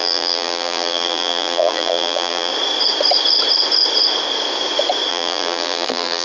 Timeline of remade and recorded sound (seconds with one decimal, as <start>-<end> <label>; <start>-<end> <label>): 0.0-2.5 remade; 2.5-5.1 recorded; 5.1-6.2 remade